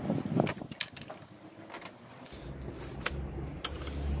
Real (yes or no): yes